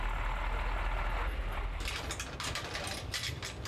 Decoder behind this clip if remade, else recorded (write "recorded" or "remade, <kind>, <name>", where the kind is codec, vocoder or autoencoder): recorded